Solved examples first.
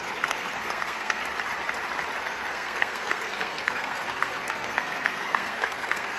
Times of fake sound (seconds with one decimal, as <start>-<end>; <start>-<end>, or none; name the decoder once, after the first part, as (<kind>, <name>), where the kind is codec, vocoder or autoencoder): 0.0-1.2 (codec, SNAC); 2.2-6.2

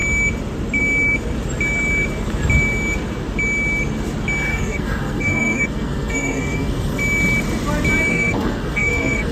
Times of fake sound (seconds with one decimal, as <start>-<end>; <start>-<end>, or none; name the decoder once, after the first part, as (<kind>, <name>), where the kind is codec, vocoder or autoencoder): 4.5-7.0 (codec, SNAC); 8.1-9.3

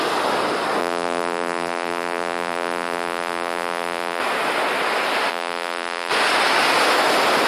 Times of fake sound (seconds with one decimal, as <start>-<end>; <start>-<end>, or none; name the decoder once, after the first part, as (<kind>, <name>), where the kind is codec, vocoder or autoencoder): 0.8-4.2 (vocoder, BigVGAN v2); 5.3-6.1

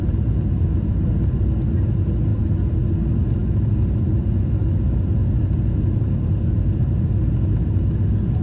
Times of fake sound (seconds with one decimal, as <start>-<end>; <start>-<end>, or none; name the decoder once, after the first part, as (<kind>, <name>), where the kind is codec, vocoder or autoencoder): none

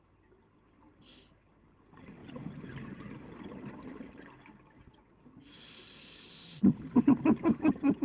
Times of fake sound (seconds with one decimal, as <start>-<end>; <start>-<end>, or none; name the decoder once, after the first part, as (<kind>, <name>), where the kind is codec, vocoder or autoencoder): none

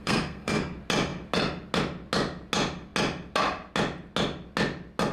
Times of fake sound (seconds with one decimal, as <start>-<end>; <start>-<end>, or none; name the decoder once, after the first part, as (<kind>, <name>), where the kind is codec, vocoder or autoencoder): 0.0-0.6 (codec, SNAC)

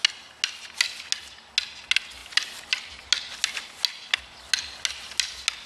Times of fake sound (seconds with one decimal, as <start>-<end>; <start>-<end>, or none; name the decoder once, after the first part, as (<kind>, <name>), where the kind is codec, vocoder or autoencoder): none